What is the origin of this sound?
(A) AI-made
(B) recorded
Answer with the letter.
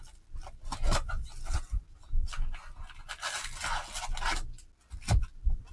B